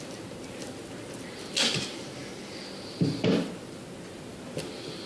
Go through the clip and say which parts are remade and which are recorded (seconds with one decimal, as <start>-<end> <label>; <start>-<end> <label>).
0.0-5.1 recorded